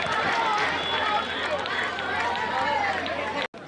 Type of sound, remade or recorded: recorded